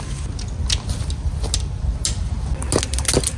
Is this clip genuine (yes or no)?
yes